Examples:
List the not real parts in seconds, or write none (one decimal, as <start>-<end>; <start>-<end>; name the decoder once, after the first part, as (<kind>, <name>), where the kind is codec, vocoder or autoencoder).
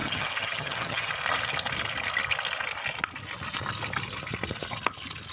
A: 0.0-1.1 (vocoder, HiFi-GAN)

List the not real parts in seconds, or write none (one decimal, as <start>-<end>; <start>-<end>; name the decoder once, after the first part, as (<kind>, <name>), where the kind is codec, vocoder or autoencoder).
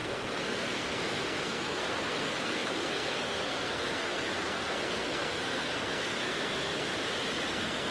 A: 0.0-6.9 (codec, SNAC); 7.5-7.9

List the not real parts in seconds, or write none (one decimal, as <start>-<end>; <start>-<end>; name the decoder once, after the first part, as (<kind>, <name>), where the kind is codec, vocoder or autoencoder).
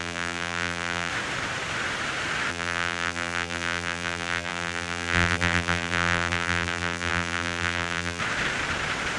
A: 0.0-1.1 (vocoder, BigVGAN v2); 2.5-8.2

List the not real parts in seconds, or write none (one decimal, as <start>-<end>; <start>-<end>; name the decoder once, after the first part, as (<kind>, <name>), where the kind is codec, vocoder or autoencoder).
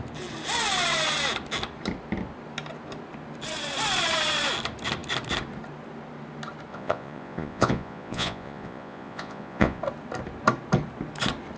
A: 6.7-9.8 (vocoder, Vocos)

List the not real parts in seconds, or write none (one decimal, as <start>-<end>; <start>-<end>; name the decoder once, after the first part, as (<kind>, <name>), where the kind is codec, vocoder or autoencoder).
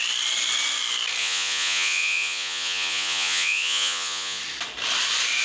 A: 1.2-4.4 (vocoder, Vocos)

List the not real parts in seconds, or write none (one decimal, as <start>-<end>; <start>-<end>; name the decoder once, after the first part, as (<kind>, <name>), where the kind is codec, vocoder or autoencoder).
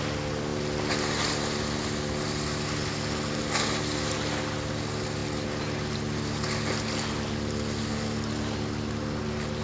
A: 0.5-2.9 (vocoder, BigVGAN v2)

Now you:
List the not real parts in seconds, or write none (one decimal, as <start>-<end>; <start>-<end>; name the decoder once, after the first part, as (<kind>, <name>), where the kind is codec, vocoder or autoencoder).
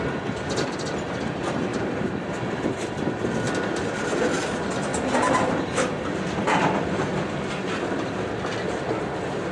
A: 1.7-2.3 (vocoder, BigVGAN v2); 4.9-5.6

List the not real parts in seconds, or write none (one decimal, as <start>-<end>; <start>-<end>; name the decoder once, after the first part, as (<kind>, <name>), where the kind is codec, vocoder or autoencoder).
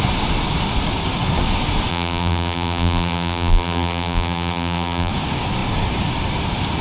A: 1.9-5.1 (vocoder, BigVGAN v2)